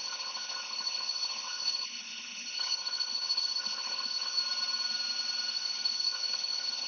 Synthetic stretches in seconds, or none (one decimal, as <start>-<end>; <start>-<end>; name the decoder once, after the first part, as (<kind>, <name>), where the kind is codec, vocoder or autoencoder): 0.0-4.4 (codec, HILCodec); 5.5-6.9